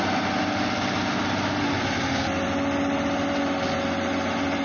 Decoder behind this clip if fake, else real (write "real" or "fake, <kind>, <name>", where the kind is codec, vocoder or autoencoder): real